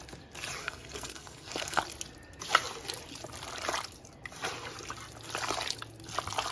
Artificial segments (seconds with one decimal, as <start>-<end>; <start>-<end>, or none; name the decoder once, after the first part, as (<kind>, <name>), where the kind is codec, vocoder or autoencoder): 0.6-1.8 (codec, SNAC)